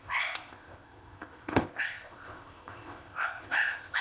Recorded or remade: remade